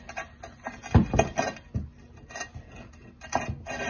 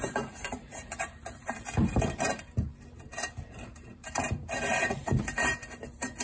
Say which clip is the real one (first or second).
first